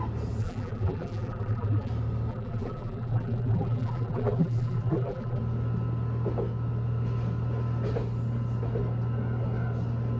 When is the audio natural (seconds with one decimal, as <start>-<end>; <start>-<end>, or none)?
0.0-0.4; 1.9-2.3; 5.4-10.2